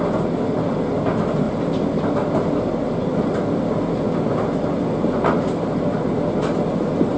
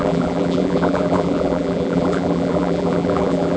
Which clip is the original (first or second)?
first